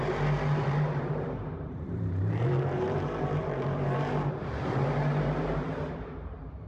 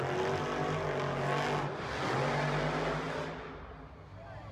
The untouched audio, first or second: second